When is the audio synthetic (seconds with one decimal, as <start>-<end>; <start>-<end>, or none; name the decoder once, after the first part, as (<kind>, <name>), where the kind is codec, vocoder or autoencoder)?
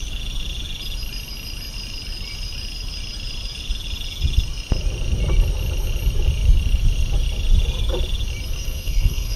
8.6-9.4 (codec, SNAC)